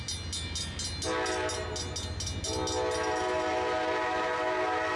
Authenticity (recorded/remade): recorded